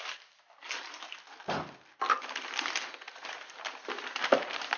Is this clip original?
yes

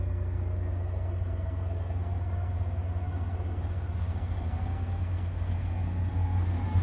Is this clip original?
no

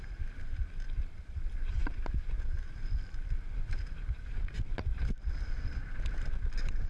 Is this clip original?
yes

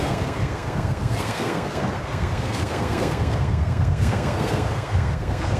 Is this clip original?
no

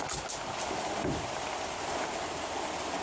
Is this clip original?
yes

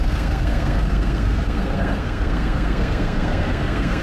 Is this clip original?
no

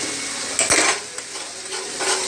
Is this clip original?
yes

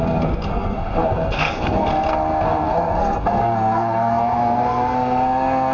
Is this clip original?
no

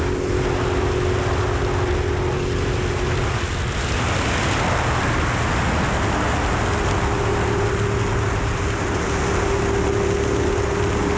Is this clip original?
yes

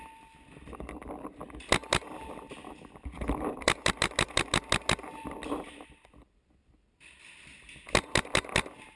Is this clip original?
yes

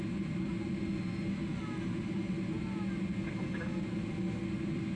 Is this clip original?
yes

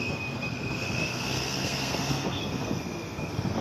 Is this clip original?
no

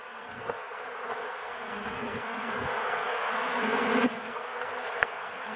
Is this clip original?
no